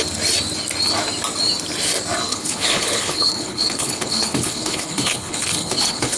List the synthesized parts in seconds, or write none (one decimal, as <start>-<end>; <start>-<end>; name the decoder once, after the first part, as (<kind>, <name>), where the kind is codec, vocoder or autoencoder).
2.3-6.2 (codec, HILCodec)